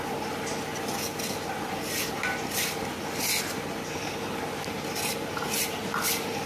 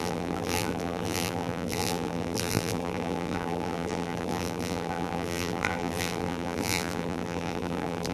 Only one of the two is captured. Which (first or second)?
first